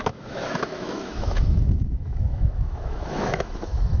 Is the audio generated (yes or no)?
yes